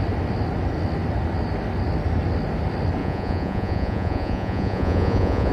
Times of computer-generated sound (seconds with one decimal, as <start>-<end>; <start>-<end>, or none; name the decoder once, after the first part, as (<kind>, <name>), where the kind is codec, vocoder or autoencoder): 3.0-5.5 (vocoder, Vocos)